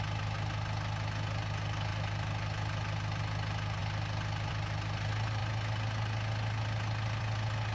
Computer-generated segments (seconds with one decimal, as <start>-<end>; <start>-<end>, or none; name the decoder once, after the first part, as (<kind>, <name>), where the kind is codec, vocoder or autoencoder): 1.9-3.2 (vocoder, BigVGAN v2); 3.8-4.5

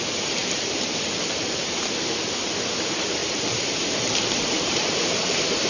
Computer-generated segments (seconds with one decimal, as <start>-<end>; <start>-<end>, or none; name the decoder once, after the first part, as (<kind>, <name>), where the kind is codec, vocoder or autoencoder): 0.4-1.8 (vocoder, BigVGAN v2); 3.2-5.7

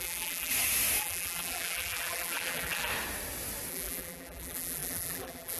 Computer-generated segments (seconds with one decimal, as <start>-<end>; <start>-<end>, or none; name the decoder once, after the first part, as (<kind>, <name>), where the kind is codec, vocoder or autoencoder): 0.0-0.5 (vocoder, BigVGAN v2); 1.0-2.9; 3.7-5.6

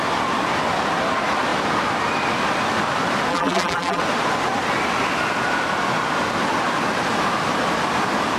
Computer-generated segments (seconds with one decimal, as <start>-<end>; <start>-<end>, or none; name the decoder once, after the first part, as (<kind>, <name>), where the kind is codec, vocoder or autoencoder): 3.3-4.0 (vocoder, BigVGAN v2)

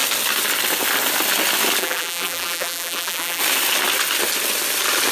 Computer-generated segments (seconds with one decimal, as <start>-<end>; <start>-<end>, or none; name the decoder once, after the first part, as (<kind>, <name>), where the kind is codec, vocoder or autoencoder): 1.8-3.4 (vocoder, BigVGAN v2)

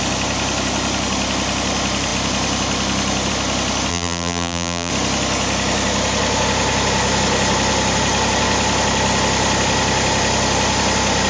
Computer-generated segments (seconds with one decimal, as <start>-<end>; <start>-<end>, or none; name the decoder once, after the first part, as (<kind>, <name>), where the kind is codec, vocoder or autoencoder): 3.9-4.9 (vocoder, BigVGAN v2)

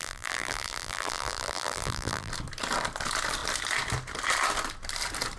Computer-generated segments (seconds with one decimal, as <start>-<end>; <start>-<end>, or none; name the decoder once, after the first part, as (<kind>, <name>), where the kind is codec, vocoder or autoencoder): 0.0-2.3 (vocoder, BigVGAN v2)